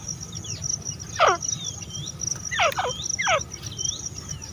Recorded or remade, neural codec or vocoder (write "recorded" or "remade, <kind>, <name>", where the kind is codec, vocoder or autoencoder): recorded